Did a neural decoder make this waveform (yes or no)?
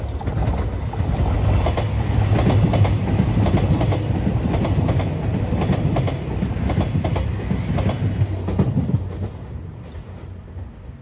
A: no